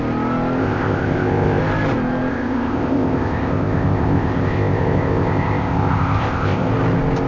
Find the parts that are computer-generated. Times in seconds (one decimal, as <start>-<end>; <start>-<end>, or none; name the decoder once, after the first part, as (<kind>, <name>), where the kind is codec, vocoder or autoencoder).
0.6-1.6 (codec, ZipCodec); 2.3-6.7